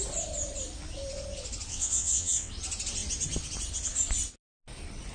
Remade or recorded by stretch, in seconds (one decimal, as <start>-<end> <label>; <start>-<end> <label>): 0.0-1.7 recorded; 1.7-2.5 remade; 2.5-5.1 recorded